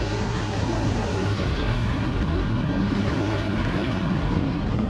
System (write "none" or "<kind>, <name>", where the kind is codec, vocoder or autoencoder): codec, SNAC